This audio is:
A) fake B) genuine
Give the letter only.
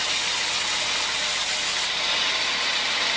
B